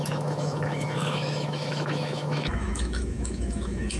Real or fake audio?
fake